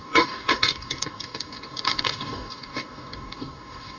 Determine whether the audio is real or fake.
fake